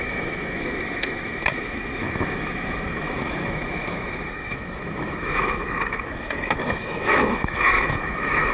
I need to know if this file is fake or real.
fake